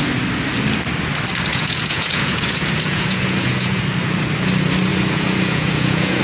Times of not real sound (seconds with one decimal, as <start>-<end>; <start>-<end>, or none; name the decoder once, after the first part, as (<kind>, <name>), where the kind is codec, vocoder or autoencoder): 1.5-3.8 (vocoder, Vocos); 4.9-6.2